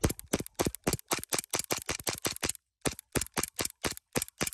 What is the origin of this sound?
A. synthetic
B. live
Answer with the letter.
B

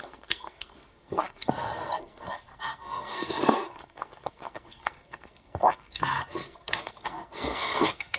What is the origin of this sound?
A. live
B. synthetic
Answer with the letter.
B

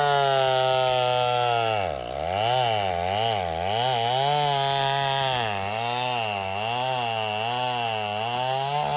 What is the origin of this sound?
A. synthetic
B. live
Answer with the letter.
B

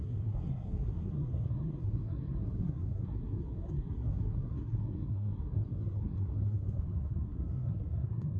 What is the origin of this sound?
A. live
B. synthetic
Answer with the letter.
B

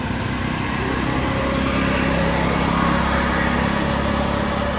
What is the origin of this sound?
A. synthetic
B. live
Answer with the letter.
B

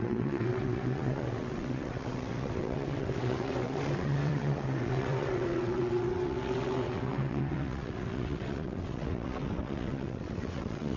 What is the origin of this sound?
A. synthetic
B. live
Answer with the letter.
A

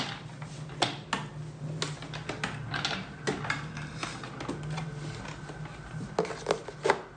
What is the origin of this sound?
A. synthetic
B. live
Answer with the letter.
B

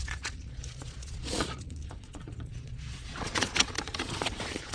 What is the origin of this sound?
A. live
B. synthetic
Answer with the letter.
B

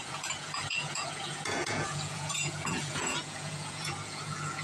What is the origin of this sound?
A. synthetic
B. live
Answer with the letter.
A